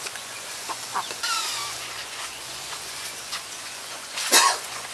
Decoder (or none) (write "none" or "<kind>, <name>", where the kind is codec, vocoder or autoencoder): vocoder, Vocos